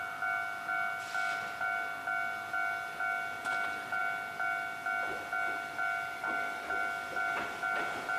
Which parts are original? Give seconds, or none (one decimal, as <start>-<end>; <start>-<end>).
0.0-8.2

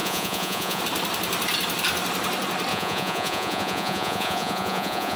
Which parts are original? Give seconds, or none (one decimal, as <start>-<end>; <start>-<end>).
0.8-2.7

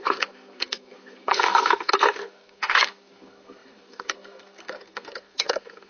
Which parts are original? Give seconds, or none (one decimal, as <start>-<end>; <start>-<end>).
none

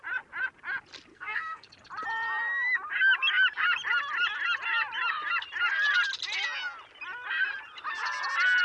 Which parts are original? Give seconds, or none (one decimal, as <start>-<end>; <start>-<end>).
0.0-1.1; 1.7-8.6

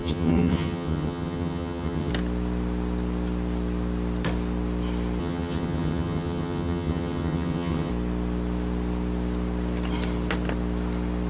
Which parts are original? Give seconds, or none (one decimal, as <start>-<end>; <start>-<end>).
2.1-5.2; 7.9-11.3

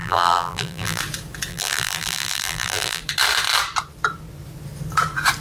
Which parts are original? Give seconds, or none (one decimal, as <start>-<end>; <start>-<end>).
1.0-1.5; 3.0-5.4

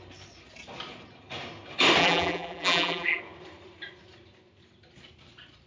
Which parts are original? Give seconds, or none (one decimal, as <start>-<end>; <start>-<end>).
0.0-2.0; 3.2-5.7

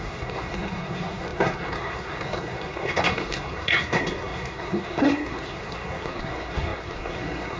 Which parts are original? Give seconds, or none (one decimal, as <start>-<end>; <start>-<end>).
none